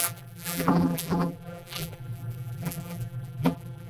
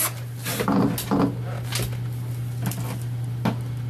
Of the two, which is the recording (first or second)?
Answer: second